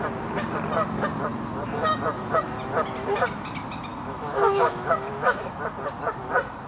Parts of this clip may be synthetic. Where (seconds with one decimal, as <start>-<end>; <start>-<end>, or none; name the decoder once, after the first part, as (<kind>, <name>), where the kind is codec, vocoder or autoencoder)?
3.9-5.5 (autoencoder, DAC-VAE)